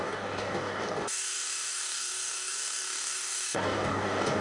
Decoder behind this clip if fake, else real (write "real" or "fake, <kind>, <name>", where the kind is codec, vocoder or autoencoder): fake, codec, DAC